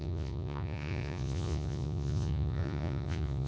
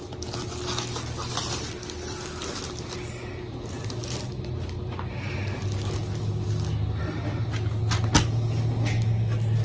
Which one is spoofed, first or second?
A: first